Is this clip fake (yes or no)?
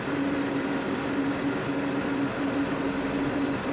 no